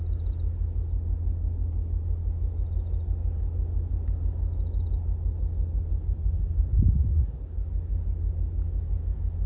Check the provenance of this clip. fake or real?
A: real